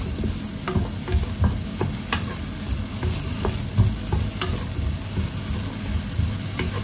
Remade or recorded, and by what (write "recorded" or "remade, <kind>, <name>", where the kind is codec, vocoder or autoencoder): recorded